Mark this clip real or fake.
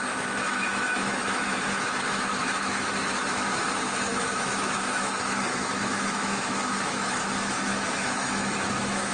fake